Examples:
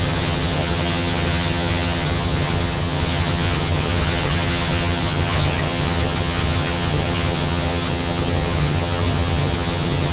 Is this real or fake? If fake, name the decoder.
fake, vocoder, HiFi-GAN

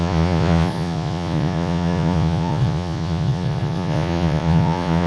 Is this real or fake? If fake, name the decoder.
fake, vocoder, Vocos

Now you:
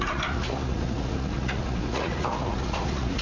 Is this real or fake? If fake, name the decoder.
fake, vocoder, Vocos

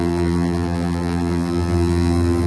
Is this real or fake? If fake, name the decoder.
fake, vocoder, BigVGAN v2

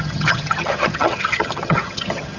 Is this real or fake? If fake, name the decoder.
fake, vocoder, HiFi-GAN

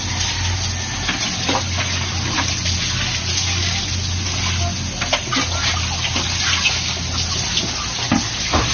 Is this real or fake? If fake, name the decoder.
real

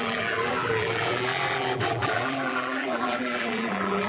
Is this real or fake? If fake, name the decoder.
fake, vocoder, BigVGAN v2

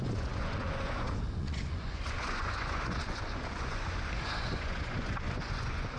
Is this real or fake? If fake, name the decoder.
fake, vocoder, Vocos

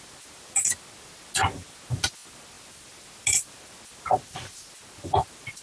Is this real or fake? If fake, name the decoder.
real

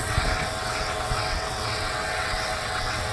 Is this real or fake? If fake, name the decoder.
fake, vocoder, WaveNeXt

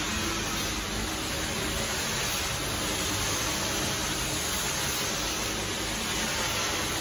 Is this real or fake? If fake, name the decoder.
real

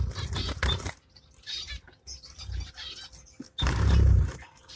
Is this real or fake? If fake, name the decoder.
real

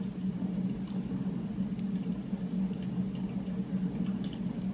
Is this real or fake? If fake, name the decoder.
real